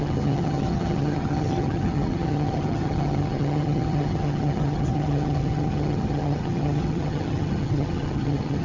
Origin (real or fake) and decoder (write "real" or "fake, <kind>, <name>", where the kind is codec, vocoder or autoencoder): fake, vocoder, HiFi-GAN